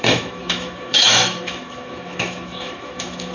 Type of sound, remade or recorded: remade